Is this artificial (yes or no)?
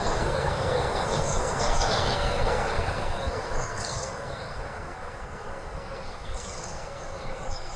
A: yes